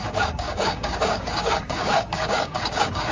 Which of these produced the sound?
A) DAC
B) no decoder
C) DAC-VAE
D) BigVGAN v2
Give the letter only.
A